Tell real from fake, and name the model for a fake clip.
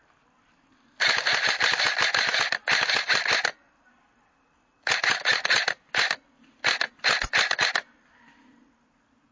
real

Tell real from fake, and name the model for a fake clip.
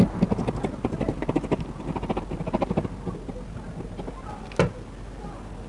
real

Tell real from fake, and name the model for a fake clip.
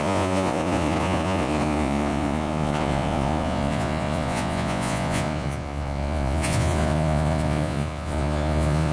fake, vocoder, Vocos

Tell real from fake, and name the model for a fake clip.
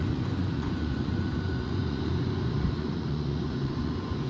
fake, vocoder, Vocos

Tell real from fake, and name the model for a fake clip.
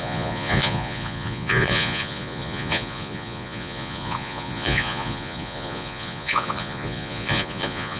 fake, vocoder, Vocos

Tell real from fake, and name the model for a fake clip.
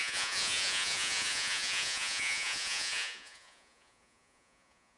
fake, vocoder, Vocos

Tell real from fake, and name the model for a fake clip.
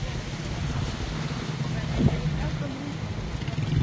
real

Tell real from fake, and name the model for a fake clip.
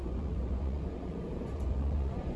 fake, vocoder, Vocos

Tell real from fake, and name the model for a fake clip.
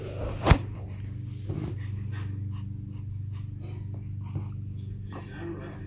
real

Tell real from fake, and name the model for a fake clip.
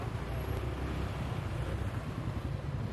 real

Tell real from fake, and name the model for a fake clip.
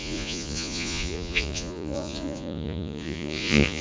fake, vocoder, Vocos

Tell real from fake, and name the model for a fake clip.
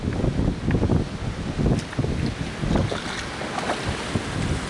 real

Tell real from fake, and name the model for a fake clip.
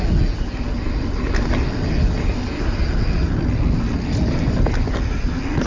real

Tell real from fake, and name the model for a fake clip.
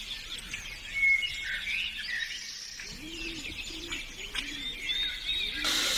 real